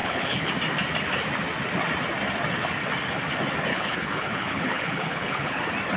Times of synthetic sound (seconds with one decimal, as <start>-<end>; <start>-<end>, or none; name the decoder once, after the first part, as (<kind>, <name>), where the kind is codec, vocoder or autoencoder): 0.0-0.5 (codec, HILCodec); 3.7-5.6